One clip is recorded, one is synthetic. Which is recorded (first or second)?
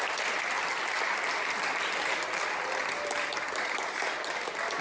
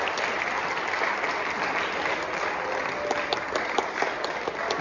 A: second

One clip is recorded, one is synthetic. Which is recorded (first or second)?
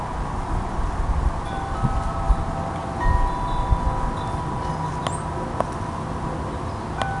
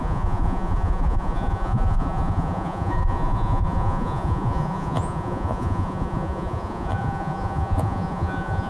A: first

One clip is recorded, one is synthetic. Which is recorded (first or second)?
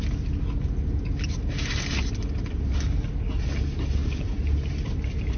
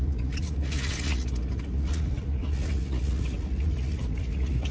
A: first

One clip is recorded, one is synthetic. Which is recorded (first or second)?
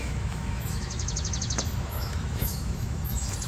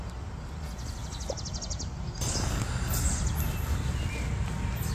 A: second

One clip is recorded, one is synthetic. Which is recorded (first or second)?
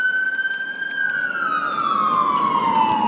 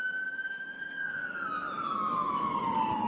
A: first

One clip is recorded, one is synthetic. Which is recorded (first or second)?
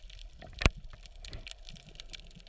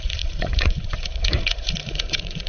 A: first